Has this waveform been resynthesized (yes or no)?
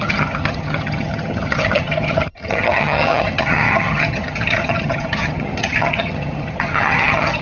yes